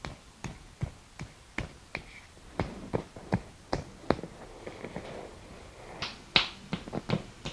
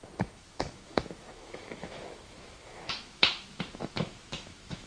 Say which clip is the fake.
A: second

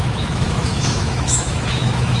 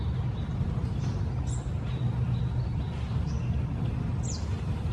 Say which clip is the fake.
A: first